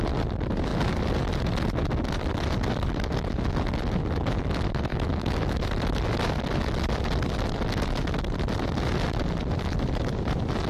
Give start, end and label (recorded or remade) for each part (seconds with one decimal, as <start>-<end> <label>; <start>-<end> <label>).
0.0-4.9 recorded; 4.9-5.6 remade; 5.6-10.7 recorded